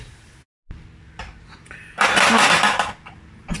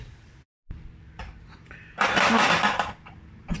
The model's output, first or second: second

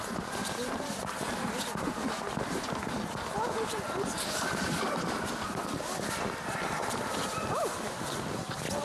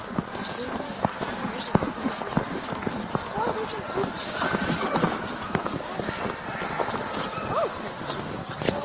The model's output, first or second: first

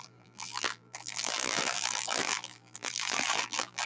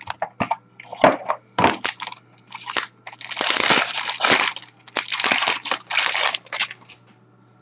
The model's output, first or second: first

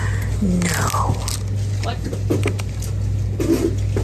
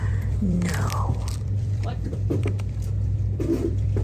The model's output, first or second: second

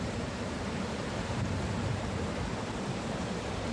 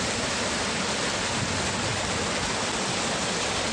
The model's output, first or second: first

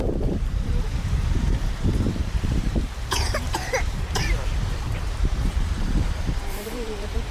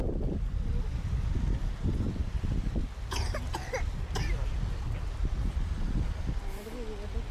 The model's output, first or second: first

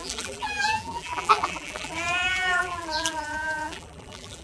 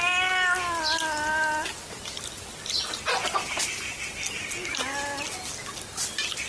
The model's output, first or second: first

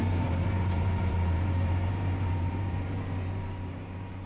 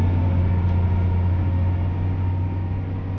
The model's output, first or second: first